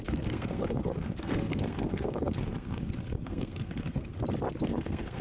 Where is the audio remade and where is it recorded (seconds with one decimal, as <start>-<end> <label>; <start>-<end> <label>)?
0.0-4.1 remade; 4.1-4.7 recorded; 4.7-5.2 remade